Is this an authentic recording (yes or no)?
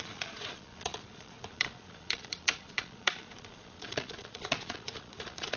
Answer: no